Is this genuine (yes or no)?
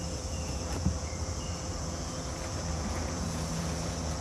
no